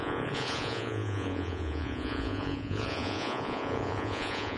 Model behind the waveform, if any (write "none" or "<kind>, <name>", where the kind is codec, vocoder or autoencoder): vocoder, Vocos